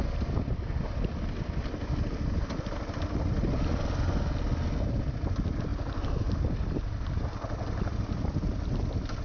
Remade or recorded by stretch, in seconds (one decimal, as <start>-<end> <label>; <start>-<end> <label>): 0.0-9.2 recorded